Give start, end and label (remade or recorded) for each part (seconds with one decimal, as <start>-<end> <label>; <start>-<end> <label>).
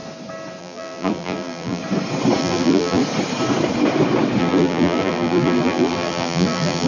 0.0-0.6 recorded; 0.6-1.8 remade; 1.8-2.4 recorded; 2.4-3.0 remade; 3.0-4.4 recorded; 4.4-6.9 remade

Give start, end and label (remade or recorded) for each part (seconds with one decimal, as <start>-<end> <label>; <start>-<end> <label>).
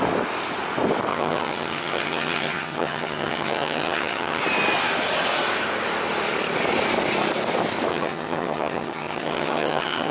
0.0-1.1 recorded; 1.1-4.4 remade; 4.4-7.9 recorded; 7.9-10.1 remade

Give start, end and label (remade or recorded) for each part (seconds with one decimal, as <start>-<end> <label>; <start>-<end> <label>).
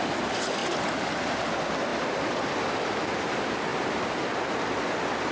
0.0-5.3 recorded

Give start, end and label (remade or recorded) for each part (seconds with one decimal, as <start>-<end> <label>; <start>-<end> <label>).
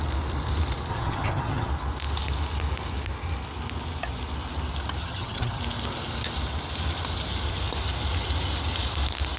0.0-0.9 recorded; 0.9-1.7 remade; 1.7-5.0 recorded; 5.0-5.6 remade; 5.6-9.4 recorded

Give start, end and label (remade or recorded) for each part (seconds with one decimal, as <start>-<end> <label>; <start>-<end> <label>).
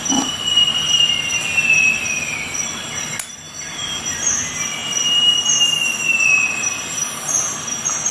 0.0-8.1 recorded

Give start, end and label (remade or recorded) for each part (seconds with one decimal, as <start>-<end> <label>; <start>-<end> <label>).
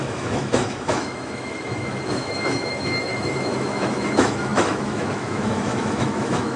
0.0-6.6 remade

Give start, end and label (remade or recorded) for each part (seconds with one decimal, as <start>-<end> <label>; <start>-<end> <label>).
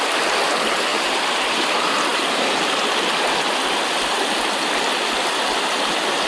0.0-0.9 recorded; 0.9-1.7 remade; 1.7-6.3 recorded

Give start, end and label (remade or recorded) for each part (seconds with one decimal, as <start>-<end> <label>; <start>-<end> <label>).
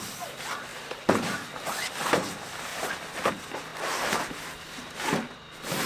0.0-0.7 recorded; 0.7-1.9 remade; 1.9-5.9 recorded